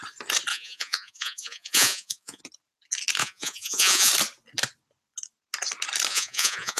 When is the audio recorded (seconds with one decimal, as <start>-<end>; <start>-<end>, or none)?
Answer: 0.0-0.5; 2.4-3.2; 4.1-6.1